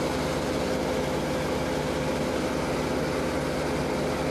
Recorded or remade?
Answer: recorded